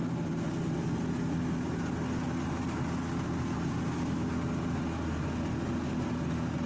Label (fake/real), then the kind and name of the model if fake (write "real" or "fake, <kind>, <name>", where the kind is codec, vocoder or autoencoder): real